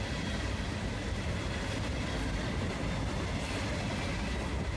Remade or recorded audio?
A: recorded